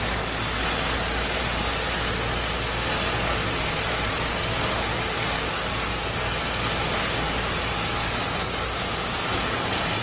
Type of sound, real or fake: real